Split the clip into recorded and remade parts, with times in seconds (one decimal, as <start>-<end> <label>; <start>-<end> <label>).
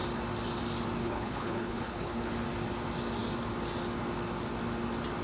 0.0-1.0 recorded; 1.0-2.3 remade; 2.3-5.2 recorded